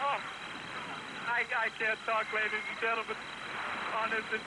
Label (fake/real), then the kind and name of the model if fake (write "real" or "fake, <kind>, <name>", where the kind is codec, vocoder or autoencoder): real